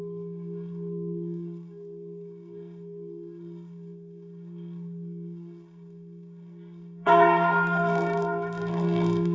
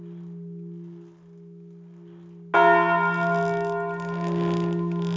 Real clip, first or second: second